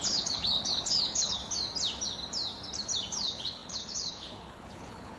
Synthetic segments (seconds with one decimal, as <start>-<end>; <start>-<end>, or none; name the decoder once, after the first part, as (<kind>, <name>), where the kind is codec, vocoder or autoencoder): 0.0-1.4 (codec, HILCodec); 3.1-5.2

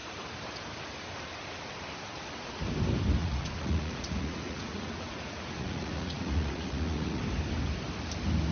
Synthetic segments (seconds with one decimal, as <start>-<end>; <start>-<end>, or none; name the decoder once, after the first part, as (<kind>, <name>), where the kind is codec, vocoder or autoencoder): 3.2-7.2 (vocoder, Vocos)

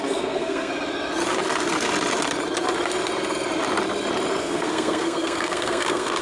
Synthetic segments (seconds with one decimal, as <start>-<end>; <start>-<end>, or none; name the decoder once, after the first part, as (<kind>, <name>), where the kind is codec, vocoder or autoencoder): 0.0-0.7 (codec, SNAC); 4.4-6.2

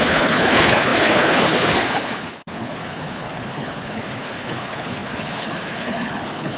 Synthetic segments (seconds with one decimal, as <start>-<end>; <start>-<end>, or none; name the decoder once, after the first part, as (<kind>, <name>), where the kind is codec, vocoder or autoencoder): 0.0-6.6 (codec, HILCodec)

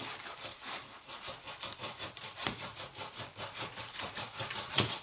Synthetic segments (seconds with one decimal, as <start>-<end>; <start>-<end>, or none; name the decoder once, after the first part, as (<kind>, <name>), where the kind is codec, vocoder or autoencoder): 1.8-5.0 (vocoder, Vocos)

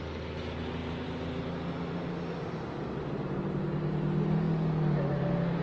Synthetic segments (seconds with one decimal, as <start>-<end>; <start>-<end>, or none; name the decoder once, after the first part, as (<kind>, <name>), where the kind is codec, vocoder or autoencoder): none